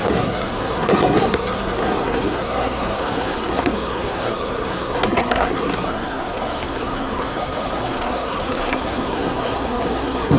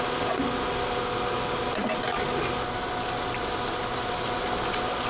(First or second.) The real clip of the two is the second